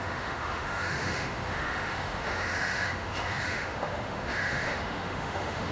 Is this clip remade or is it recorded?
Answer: remade